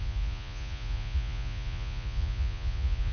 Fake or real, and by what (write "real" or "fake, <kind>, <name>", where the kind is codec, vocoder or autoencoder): fake, vocoder, Vocos